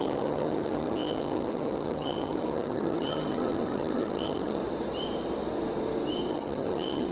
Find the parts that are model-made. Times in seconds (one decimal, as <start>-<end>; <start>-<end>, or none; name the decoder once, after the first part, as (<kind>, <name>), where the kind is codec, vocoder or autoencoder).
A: 0.0-4.6 (vocoder, HiFi-GAN); 6.3-7.1